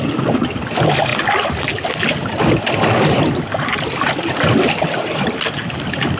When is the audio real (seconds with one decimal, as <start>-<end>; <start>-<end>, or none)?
0.0-6.2